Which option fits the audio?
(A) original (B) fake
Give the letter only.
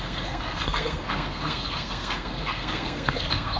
B